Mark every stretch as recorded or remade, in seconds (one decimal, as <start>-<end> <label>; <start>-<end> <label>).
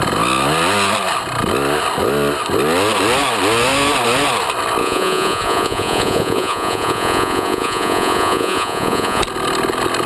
0.0-4.8 recorded; 4.8-9.2 remade; 9.2-10.1 recorded